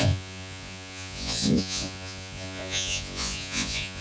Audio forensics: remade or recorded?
remade